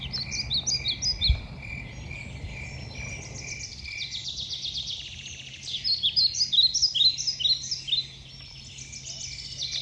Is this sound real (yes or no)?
yes